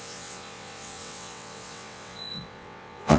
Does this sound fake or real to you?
fake